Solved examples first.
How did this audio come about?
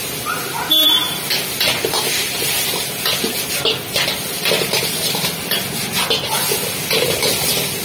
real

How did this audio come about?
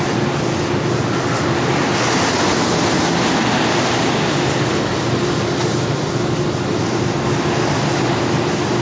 real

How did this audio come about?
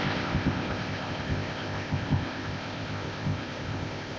fake